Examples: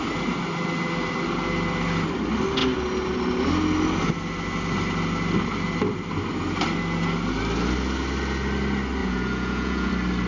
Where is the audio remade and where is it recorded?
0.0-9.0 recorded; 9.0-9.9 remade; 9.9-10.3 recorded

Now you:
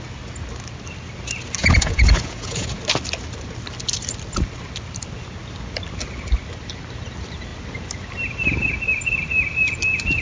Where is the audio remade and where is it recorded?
0.0-1.6 recorded; 1.6-2.8 remade; 2.8-10.2 recorded

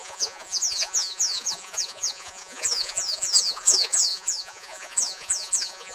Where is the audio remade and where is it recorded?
0.0-5.9 remade